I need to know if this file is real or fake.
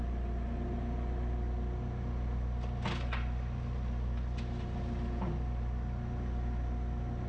real